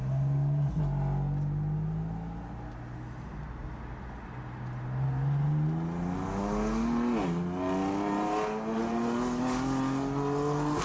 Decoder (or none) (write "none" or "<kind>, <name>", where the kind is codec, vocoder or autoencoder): none